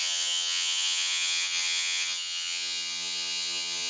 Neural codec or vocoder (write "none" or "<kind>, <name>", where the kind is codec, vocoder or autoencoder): vocoder, HiFi-GAN